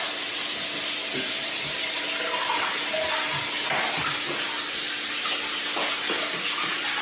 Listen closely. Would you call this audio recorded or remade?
recorded